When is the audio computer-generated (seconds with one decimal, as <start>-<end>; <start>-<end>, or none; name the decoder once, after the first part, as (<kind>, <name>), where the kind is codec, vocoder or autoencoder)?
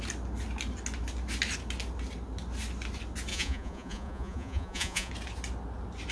3.3-5.1 (vocoder, Vocos)